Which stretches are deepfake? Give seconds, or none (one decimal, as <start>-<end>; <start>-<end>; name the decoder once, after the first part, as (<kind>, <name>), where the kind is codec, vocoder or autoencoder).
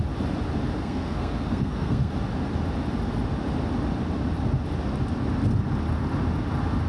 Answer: 0.8-2.1 (codec, SNAC)